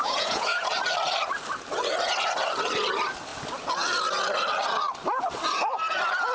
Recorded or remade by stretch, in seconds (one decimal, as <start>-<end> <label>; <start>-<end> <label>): 0.0-0.7 remade; 0.7-6.3 recorded

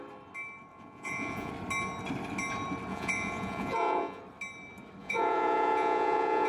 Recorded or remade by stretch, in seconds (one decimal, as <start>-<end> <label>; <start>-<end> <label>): 0.0-0.7 recorded; 0.7-1.5 remade; 1.5-2.9 recorded; 2.9-4.2 remade; 4.2-5.0 recorded; 5.0-6.5 remade